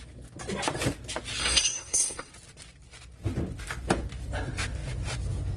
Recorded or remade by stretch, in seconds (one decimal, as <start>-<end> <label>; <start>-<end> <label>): 0.0-1.4 recorded; 1.4-2.3 remade; 2.3-5.6 recorded

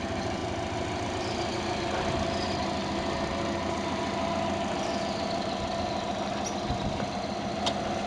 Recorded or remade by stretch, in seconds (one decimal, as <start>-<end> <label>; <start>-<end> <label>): 0.0-8.1 recorded